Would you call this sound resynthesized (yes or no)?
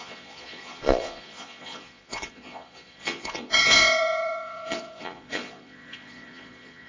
yes